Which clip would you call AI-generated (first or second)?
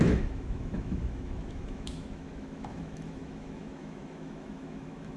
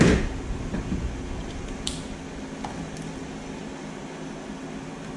first